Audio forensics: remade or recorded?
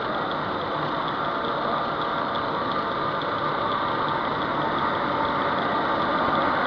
recorded